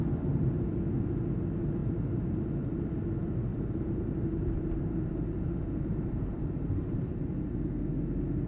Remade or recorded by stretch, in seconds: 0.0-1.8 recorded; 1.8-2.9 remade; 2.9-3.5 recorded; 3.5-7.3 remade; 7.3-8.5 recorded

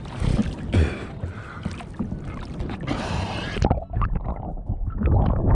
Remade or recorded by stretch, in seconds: 0.0-5.5 recorded

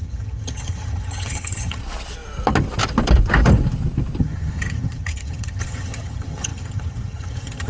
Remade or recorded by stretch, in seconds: 0.0-1.8 remade; 1.8-4.2 recorded; 4.2-7.7 remade

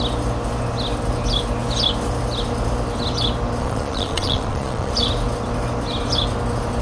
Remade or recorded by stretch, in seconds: 0.0-3.6 recorded; 3.6-4.9 remade; 4.9-6.8 recorded

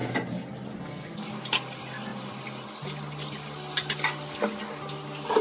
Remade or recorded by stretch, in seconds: 0.0-5.4 recorded

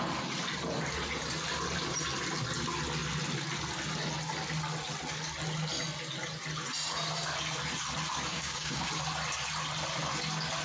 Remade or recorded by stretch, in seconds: 0.0-8.3 recorded; 8.3-8.9 remade; 8.9-10.6 recorded